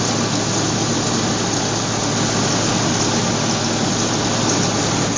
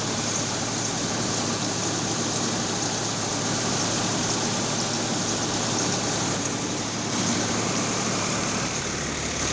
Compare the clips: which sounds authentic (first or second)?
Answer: first